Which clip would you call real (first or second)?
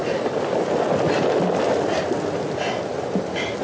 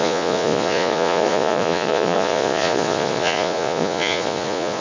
first